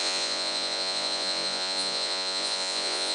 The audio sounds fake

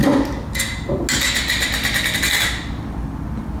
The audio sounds real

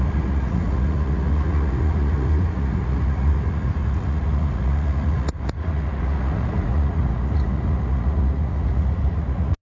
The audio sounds fake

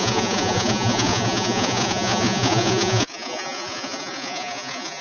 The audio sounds fake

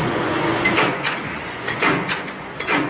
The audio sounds fake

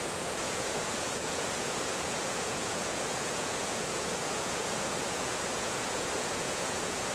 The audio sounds fake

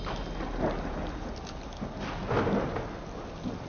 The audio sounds real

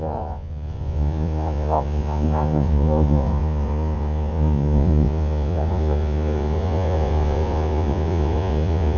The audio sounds fake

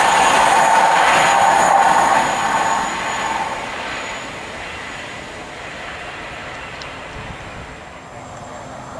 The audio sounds real